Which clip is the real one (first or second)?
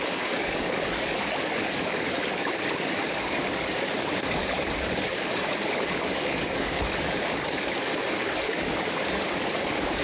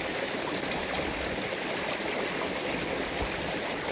second